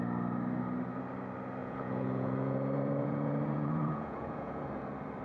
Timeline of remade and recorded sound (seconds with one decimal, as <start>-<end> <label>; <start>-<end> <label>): 0.0-1.6 recorded; 1.6-4.7 remade; 4.7-5.2 recorded